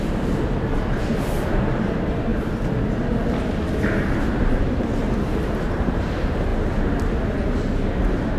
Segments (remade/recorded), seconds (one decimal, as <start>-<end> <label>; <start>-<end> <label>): 0.0-2.3 remade; 2.3-4.1 recorded; 4.1-6.5 remade; 6.5-8.4 recorded